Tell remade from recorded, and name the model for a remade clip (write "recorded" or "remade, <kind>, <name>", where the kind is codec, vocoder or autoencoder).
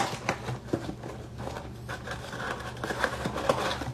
recorded